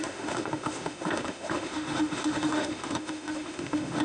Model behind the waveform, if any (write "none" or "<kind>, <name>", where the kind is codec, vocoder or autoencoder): autoencoder, DAC-VAE